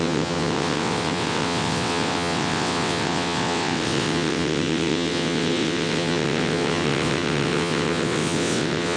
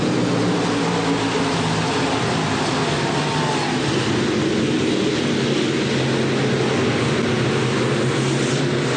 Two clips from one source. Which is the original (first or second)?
second